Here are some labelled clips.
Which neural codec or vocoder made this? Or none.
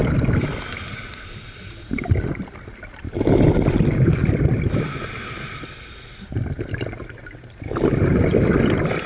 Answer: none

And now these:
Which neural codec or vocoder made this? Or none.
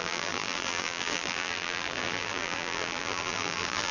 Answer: vocoder, BigVGAN v2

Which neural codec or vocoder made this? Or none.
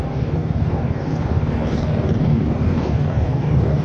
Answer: codec, DAC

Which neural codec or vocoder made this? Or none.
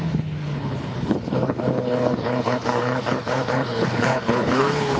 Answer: codec, HILCodec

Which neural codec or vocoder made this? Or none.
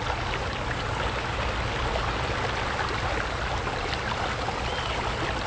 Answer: none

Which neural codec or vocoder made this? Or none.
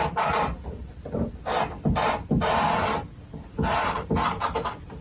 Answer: none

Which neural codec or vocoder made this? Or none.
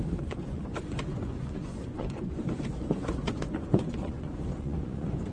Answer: vocoder, Vocos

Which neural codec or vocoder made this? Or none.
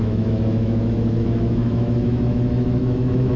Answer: autoencoder, DAC-VAE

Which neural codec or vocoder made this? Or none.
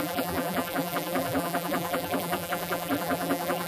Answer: vocoder, BigVGAN v2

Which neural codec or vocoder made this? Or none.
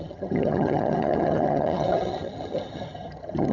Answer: vocoder, HiFi-GAN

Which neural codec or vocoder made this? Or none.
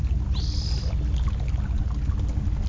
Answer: none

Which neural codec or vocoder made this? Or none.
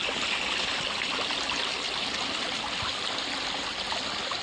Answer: none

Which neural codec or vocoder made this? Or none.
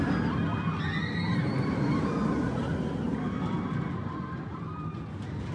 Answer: none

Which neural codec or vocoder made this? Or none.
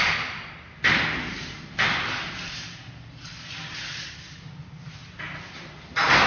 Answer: none